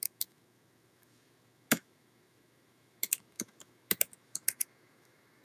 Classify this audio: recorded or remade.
remade